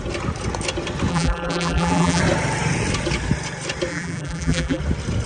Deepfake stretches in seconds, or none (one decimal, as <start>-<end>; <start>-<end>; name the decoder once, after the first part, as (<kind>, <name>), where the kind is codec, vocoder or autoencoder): 1.1-2.2 (vocoder, BigVGAN v2); 3.9-4.8